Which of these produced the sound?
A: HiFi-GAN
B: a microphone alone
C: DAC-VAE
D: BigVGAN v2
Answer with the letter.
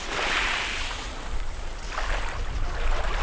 B